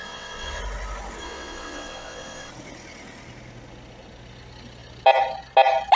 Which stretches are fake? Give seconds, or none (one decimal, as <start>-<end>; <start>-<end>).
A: 0.0-0.6; 1.2-2.5